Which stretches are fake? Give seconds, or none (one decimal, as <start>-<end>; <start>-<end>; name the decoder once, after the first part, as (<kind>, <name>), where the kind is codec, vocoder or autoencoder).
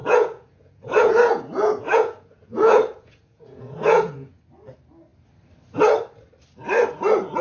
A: 0.0-4.4 (vocoder, Vocos)